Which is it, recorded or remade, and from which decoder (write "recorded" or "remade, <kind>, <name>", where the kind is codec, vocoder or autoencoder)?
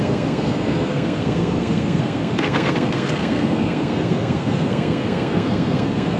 remade, codec, SNAC